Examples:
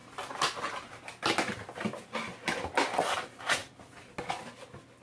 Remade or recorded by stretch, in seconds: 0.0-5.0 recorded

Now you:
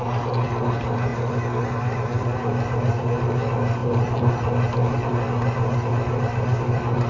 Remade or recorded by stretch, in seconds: 0.0-7.1 recorded

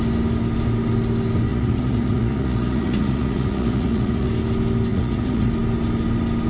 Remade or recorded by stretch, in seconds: 0.0-1.5 recorded; 1.5-4.3 remade; 4.3-4.9 recorded; 4.9-5.5 remade; 5.5-6.5 recorded

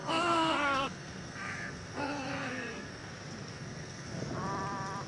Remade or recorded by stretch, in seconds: 0.0-3.1 remade; 3.1-3.5 recorded; 3.5-4.2 remade; 4.2-5.1 recorded

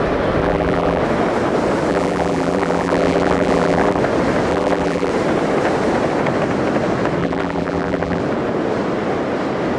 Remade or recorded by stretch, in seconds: 0.0-0.4 recorded; 0.4-1.0 remade; 1.0-1.9 recorded; 1.9-4.0 remade; 4.0-4.5 recorded; 4.5-5.1 remade; 5.1-7.2 recorded; 7.2-8.2 remade; 8.2-9.8 recorded

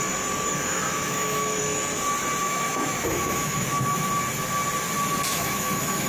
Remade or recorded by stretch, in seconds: 0.0-0.5 recorded; 0.5-1.6 remade; 1.6-2.4 recorded; 2.4-4.1 remade; 4.1-5.3 recorded; 5.3-6.1 remade

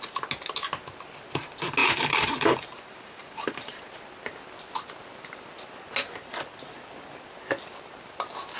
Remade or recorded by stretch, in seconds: 0.0-1.8 recorded; 1.8-3.8 remade; 3.8-8.6 recorded